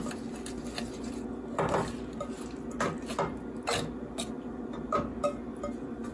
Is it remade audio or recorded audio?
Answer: recorded